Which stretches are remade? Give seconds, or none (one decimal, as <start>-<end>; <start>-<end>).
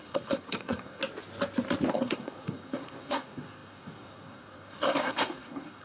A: 0.0-1.0; 1.9-5.8